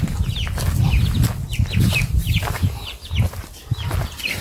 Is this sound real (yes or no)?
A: yes